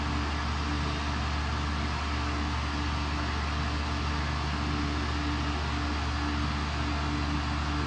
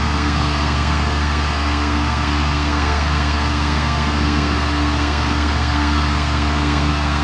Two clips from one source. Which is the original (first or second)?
first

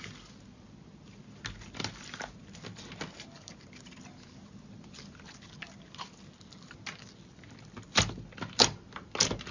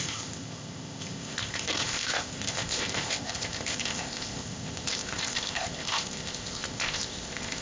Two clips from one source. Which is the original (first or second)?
first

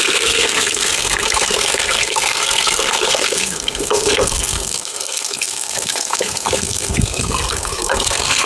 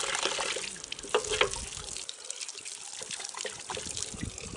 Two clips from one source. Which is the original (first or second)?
second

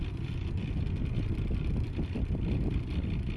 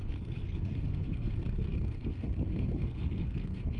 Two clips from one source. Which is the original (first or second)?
first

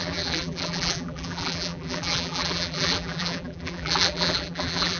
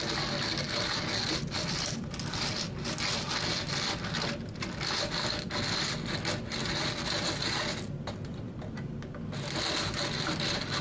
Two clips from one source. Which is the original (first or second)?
second